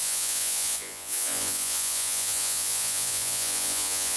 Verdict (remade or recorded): remade